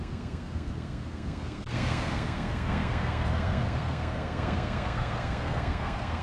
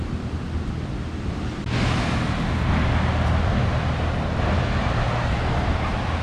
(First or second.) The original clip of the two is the second